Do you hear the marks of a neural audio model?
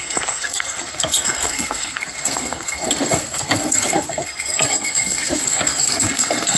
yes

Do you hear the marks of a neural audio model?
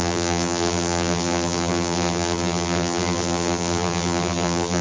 yes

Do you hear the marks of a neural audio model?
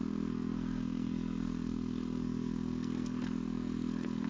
yes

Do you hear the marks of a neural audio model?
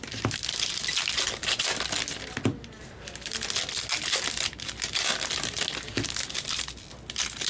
no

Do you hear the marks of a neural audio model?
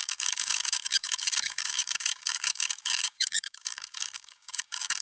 yes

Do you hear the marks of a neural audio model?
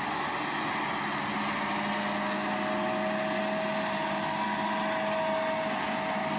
no